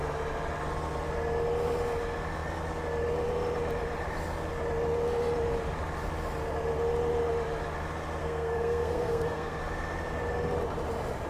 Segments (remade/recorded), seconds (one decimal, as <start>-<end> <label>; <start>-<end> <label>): 0.0-8.2 recorded; 8.2-9.6 remade; 9.6-11.3 recorded